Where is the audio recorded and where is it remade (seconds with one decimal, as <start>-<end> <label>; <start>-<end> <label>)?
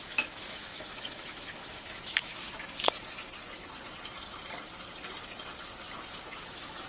0.0-2.3 remade; 2.3-6.4 recorded; 6.4-6.9 remade